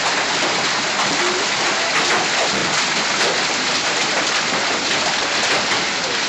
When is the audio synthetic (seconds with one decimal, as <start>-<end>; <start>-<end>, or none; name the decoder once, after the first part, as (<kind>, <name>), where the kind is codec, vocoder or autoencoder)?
none